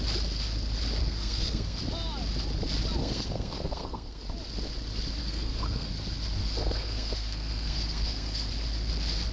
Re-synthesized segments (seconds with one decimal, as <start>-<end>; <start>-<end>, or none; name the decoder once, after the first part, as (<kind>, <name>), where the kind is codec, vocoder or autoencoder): 1.0-1.8 (codec, SNAC); 3.0-4.2; 5.2-5.9; 6.4-8.5